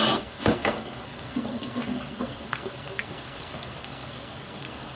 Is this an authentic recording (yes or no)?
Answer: no